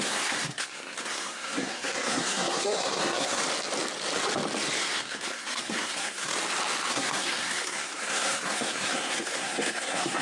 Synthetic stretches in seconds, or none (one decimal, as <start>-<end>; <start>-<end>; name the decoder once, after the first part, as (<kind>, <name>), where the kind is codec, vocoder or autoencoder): 0.0-3.4 (codec, SNAC); 4.8-6.3; 6.9-10.2